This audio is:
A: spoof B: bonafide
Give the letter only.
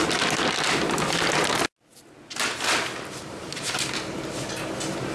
B